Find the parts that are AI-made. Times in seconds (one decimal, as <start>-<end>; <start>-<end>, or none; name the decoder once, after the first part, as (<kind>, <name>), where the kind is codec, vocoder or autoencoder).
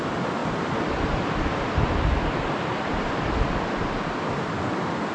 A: 0.4-1.8 (vocoder, BigVGAN v2); 2.7-5.1